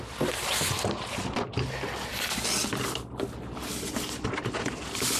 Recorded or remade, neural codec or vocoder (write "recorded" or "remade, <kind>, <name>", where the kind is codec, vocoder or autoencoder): recorded